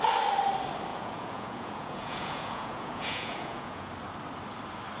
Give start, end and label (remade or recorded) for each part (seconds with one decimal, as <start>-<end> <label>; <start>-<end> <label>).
0.0-0.9 recorded; 0.9-3.9 remade; 3.9-5.0 recorded